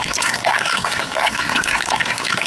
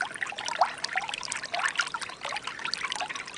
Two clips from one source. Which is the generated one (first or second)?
first